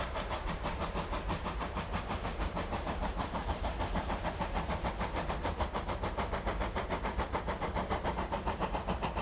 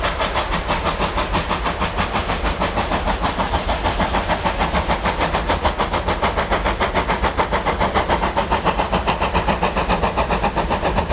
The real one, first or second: second